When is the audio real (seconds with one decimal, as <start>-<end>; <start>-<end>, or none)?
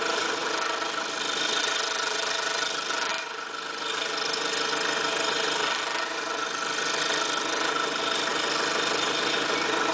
0.4-1.6; 3.1-7.7; 8.3-9.3